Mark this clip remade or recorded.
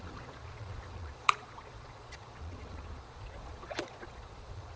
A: remade